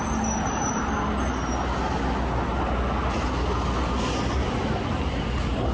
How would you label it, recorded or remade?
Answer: recorded